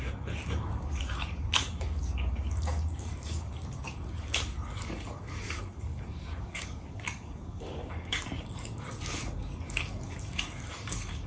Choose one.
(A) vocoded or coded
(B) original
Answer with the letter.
A